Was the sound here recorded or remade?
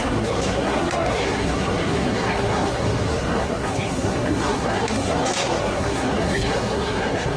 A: remade